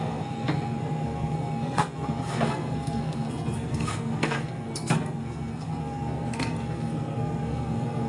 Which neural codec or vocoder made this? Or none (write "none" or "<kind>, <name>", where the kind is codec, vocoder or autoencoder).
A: codec, SNAC